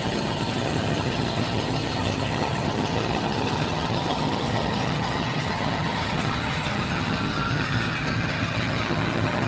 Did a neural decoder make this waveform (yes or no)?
yes